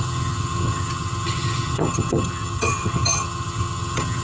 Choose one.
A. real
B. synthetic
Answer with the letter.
B